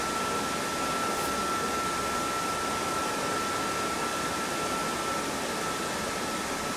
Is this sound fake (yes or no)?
no